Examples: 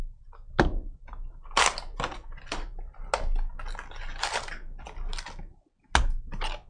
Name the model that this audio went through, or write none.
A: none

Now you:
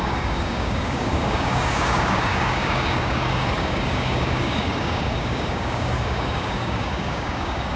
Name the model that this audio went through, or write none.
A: codec, DAC